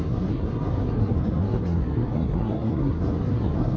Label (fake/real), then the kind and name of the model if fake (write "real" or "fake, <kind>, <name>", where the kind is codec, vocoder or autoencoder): fake, codec, SNAC